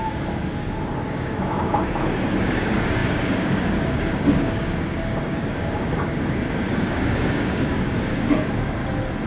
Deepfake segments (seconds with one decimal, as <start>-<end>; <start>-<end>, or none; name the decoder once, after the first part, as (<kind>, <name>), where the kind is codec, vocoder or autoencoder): 0.0-8.8 (codec, DAC)